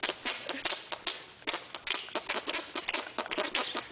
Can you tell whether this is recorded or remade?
recorded